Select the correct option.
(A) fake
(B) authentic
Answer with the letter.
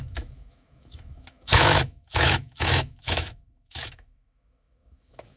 A